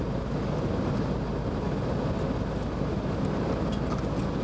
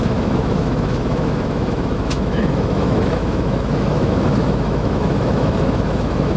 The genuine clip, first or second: first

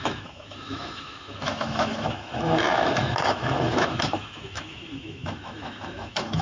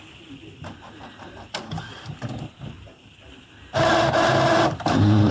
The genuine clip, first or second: second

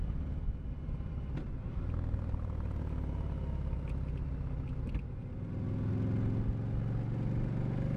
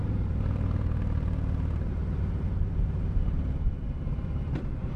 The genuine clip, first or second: first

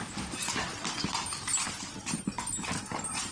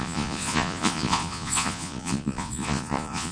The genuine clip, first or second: first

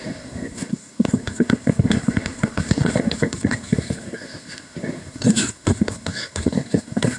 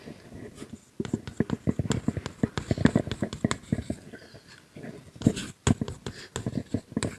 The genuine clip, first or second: second